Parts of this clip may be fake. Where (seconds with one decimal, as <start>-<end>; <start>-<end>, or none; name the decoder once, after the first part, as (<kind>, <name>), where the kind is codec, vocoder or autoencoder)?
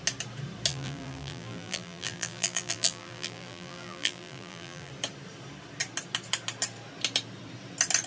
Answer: 0.7-4.9 (vocoder, BigVGAN v2)